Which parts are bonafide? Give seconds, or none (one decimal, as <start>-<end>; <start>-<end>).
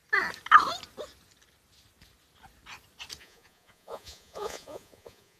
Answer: 0.0-3.2